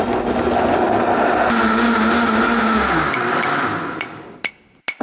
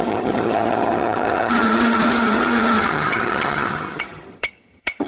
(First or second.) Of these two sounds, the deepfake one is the second